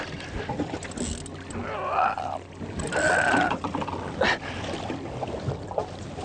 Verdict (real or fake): real